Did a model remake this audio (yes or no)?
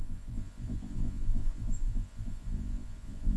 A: yes